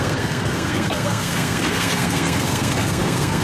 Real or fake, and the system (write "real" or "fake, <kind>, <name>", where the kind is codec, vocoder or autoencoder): fake, codec, SNAC